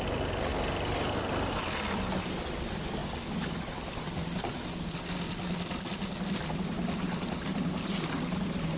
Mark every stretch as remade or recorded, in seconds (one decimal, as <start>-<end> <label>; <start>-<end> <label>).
0.0-8.8 recorded